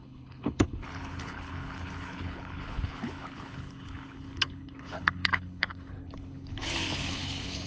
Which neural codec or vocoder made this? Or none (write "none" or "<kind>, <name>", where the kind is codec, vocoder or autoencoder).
codec, HILCodec